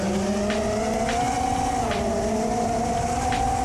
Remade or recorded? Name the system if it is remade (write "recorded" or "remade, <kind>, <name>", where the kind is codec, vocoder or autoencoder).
recorded